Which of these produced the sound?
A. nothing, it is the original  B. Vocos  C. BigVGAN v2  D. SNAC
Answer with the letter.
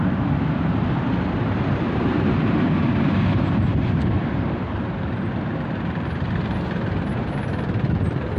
C